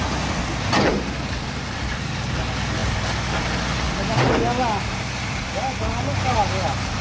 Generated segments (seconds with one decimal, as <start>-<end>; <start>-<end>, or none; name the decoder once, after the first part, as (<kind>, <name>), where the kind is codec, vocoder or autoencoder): 0.9-2.1 (vocoder, BigVGAN v2)